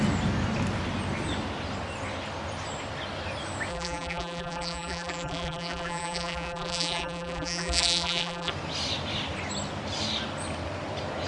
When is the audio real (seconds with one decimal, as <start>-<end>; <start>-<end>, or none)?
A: 0.0-3.7; 8.5-11.3